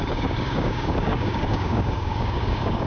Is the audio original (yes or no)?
no